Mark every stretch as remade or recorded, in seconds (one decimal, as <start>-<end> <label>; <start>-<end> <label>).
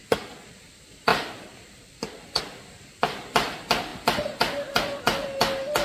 0.0-1.1 recorded; 1.1-2.4 remade; 2.4-5.8 recorded